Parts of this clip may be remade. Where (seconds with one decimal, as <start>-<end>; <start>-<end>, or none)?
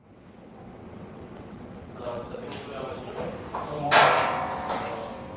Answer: 0.0-3.2